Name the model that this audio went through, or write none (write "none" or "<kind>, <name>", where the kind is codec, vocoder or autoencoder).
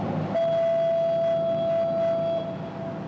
none